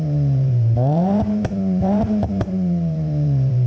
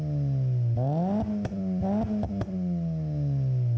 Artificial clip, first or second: first